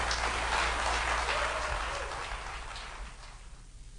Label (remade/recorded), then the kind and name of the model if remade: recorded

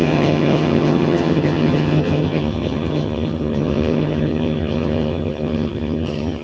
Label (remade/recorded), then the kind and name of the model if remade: remade, vocoder, HiFi-GAN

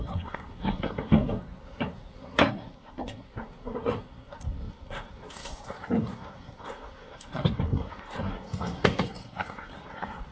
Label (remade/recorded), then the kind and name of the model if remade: remade, codec, SNAC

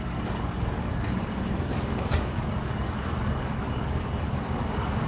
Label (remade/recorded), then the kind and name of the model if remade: remade, codec, DAC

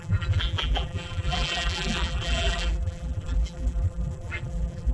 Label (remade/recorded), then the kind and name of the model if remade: remade, vocoder, BigVGAN v2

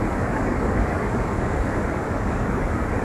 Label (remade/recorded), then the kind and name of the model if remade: remade, codec, DAC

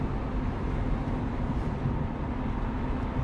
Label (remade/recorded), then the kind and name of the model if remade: recorded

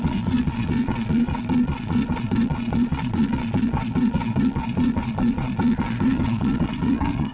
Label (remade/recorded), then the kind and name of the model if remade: remade, vocoder, Vocos